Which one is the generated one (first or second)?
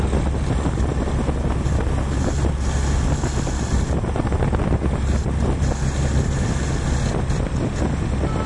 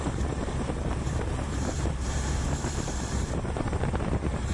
second